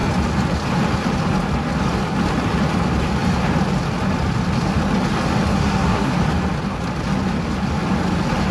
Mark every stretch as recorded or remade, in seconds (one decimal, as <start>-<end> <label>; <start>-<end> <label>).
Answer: 0.0-5.5 recorded; 5.5-6.1 remade; 6.1-8.5 recorded